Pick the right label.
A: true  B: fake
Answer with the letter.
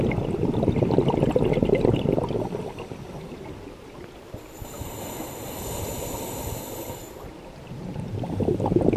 A